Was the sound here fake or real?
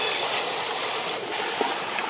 real